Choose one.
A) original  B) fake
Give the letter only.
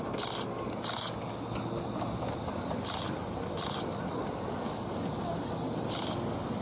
A